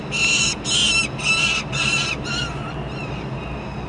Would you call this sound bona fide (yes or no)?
yes